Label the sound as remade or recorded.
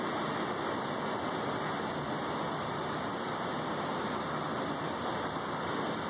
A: recorded